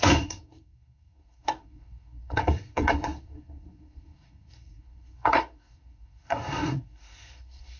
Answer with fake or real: fake